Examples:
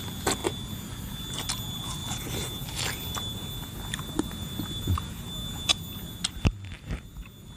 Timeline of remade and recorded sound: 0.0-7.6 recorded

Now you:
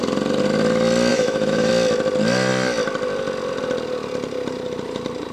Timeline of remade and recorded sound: 0.0-1.1 recorded; 1.1-1.7 remade; 1.7-5.3 recorded